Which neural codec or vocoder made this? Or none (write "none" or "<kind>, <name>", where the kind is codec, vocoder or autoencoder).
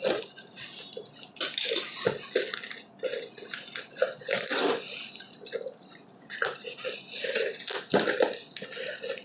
none